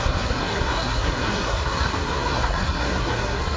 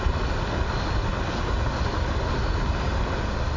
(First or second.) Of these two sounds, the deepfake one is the first